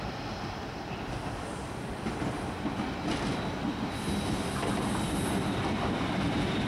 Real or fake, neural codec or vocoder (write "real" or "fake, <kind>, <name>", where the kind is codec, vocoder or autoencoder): real